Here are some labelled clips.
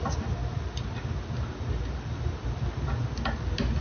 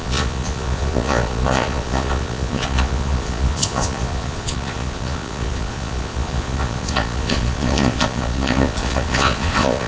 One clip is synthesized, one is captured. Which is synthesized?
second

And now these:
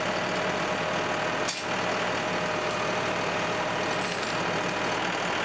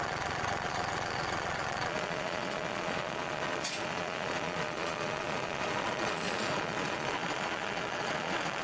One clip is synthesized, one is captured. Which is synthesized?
second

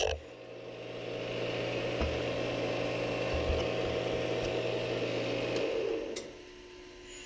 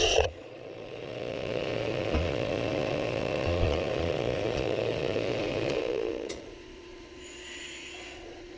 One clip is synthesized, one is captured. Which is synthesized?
second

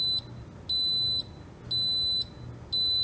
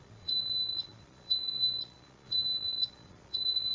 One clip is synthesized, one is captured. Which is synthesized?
second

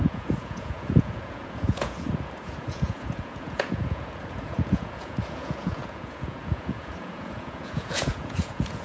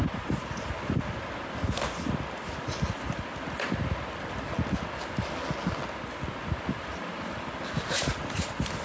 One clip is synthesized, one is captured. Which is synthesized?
first